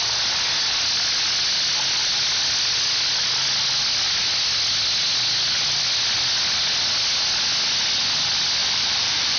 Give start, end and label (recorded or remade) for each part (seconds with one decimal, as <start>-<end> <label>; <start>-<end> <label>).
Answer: 0.0-8.6 recorded; 8.6-9.4 remade